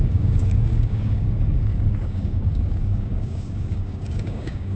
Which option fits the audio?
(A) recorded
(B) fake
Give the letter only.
B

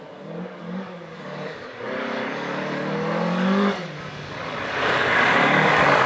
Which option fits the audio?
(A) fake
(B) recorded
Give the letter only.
A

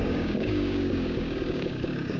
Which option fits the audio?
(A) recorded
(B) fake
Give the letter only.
B